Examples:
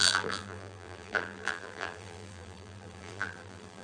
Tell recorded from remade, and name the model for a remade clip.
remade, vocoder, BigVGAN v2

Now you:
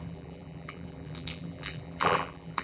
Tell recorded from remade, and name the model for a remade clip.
remade, vocoder, BigVGAN v2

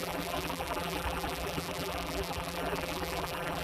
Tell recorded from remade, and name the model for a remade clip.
remade, vocoder, BigVGAN v2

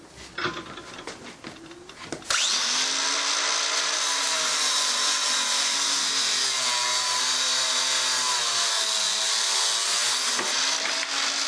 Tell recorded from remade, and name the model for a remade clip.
recorded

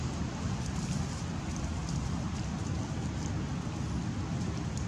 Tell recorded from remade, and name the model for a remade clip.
recorded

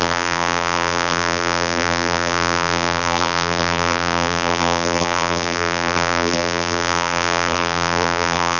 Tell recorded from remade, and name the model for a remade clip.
remade, vocoder, BigVGAN v2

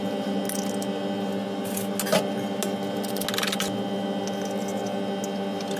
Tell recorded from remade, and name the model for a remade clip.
recorded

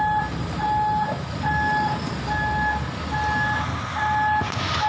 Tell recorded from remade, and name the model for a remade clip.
recorded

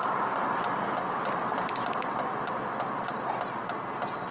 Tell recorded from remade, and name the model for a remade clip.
recorded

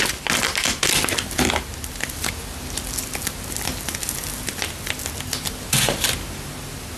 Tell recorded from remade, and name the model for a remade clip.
recorded